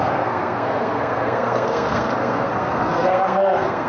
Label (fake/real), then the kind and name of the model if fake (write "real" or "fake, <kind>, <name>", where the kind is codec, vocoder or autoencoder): fake, codec, SNAC